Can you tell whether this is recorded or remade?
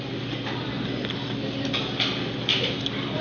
recorded